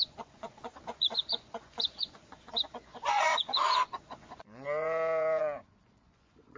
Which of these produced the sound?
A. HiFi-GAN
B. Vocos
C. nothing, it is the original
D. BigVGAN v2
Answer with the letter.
B